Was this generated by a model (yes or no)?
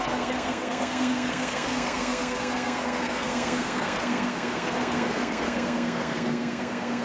yes